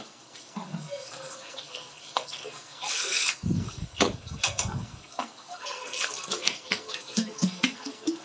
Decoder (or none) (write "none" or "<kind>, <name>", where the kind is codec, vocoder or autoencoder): codec, SNAC